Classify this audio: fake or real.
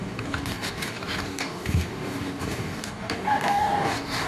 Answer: fake